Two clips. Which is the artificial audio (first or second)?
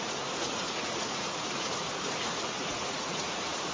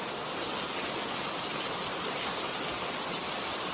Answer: first